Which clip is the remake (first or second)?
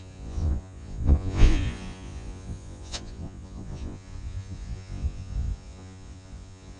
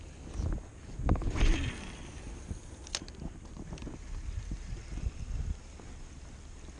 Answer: first